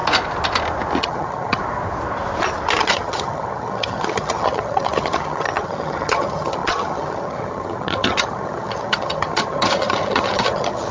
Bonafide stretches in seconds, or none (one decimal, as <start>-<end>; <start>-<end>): 0.0-1.0; 1.6-2.8